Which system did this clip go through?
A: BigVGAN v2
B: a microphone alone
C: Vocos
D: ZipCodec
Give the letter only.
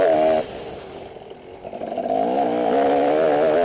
B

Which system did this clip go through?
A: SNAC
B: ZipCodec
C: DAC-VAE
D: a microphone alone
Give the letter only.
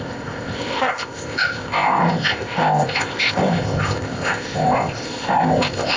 B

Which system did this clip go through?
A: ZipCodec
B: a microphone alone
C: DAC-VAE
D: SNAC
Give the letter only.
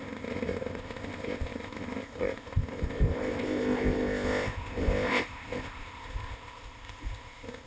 A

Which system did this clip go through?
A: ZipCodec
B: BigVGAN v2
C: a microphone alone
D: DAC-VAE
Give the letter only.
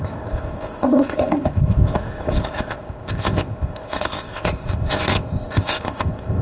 A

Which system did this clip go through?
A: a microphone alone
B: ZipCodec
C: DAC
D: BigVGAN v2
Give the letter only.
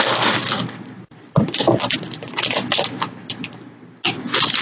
A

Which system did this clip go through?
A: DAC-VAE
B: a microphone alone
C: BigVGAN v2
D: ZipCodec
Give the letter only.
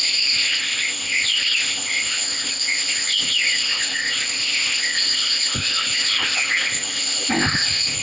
D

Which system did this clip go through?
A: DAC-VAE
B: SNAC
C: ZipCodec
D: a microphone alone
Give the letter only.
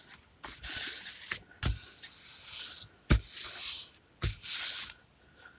D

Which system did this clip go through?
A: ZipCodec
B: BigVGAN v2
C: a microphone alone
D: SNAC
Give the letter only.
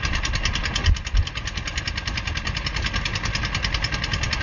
C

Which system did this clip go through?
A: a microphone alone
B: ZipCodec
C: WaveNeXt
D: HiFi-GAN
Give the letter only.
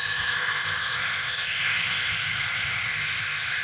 B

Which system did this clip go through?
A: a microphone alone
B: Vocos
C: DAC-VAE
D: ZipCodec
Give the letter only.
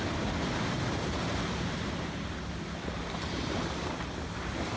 A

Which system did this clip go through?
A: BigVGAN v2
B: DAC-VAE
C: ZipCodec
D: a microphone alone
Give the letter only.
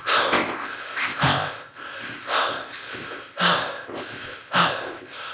C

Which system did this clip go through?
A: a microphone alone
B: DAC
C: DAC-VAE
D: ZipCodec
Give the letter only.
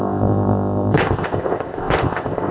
D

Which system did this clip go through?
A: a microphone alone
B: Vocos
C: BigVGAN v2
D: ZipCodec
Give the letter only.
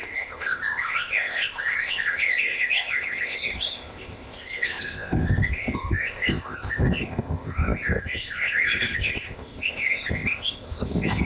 D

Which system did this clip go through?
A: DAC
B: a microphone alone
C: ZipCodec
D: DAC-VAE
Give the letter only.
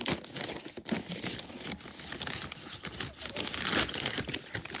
B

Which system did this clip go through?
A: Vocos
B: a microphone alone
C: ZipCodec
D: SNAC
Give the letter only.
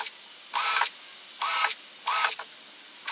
B